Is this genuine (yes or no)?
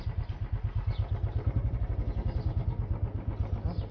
yes